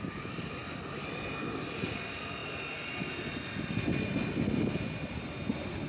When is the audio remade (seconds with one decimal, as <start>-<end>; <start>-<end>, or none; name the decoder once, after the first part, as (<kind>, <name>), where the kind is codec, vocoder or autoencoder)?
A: none